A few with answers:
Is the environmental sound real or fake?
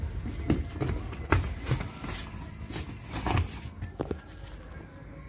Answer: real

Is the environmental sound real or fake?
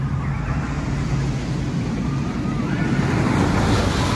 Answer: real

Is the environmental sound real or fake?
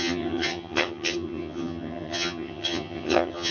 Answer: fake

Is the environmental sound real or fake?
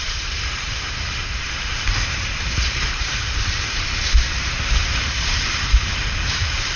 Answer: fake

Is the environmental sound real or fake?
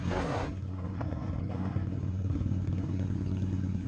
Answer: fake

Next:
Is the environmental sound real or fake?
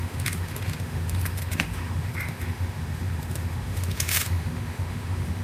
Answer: fake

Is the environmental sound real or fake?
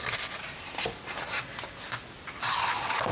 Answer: real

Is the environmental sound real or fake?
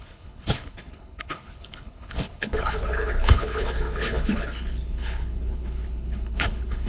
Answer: fake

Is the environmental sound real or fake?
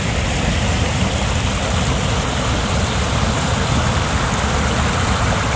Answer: real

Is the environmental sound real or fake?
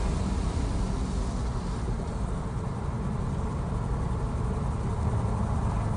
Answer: fake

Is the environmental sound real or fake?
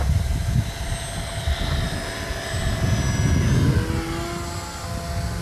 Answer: real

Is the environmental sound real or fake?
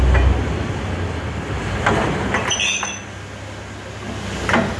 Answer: real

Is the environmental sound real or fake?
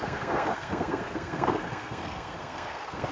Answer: fake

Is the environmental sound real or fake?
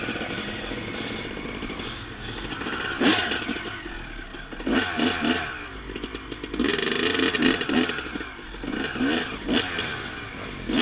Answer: real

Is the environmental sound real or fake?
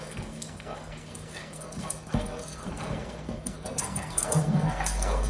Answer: fake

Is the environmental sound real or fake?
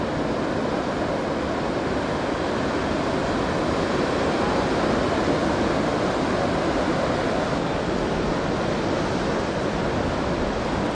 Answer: real